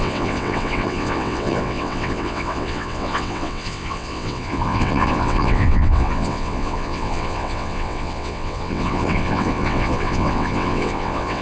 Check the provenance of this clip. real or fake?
fake